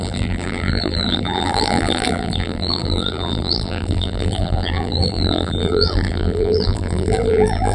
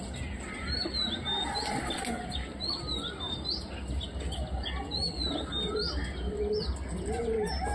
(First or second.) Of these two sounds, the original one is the second